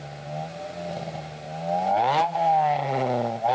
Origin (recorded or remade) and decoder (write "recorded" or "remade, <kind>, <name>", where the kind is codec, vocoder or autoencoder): recorded